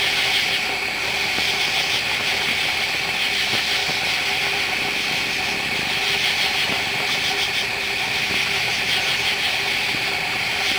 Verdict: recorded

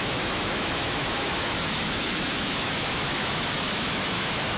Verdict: remade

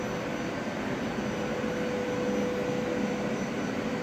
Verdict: recorded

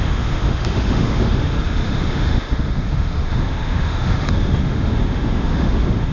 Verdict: remade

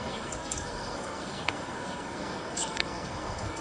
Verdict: remade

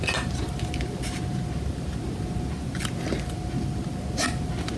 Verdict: recorded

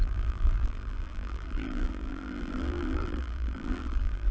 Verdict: remade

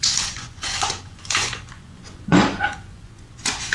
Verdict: remade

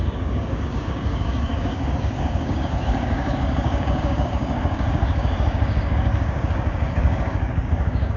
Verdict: remade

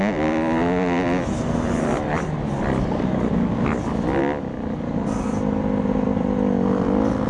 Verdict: recorded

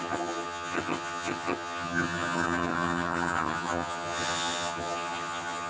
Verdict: remade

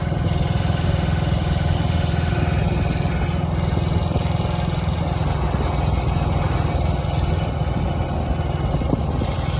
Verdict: recorded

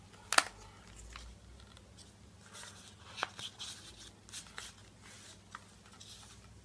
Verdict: recorded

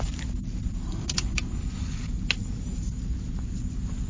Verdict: recorded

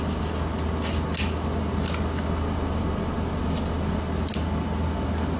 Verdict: recorded